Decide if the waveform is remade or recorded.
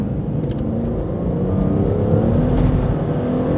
recorded